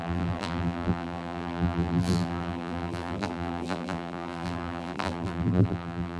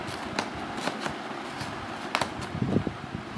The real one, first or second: second